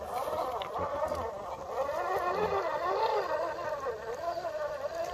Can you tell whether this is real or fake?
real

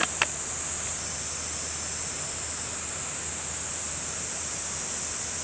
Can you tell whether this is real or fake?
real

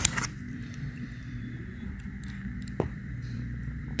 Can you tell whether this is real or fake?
fake